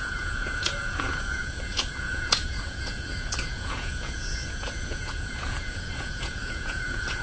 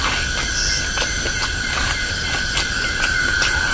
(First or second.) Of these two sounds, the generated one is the first